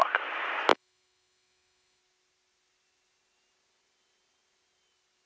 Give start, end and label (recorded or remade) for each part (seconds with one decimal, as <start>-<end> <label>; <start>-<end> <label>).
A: 0.0-0.7 recorded; 0.7-2.0 remade; 2.0-5.3 recorded